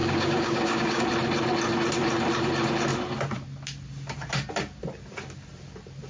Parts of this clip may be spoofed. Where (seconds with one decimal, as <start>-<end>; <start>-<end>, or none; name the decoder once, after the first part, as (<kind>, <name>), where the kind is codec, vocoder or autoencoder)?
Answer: 0.0-1.0 (codec, DAC)